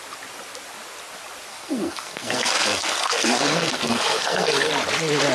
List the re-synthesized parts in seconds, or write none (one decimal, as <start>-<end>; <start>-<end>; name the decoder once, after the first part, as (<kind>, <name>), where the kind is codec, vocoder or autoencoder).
1.5-4.7 (codec, SNAC)